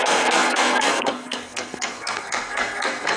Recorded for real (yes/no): no